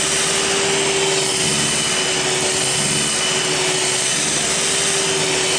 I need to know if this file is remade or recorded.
recorded